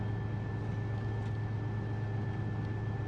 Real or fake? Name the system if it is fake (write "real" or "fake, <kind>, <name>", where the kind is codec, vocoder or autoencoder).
real